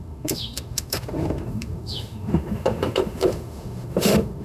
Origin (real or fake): fake